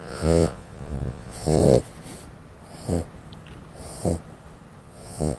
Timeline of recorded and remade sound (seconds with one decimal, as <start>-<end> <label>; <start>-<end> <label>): 0.0-1.6 remade; 1.6-4.8 recorded; 4.8-5.4 remade